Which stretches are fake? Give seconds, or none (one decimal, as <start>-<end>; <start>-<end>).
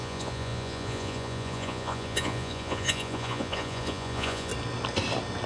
0.0-4.5